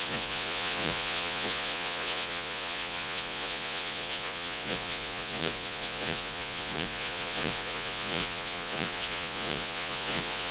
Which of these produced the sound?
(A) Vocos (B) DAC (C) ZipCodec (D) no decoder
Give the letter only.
A